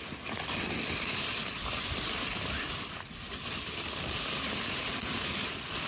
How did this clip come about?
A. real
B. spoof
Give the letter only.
A